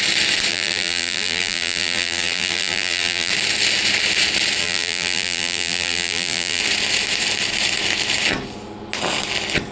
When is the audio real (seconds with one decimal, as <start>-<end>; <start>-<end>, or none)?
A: 0.0-0.5; 3.3-4.6; 6.6-9.7